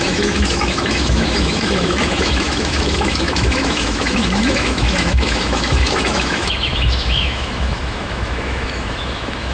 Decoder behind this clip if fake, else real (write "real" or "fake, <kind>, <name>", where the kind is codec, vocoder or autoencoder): fake, autoencoder, DAC-VAE